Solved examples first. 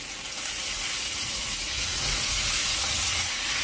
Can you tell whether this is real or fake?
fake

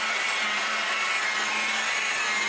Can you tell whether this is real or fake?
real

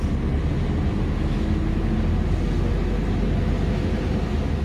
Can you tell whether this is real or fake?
real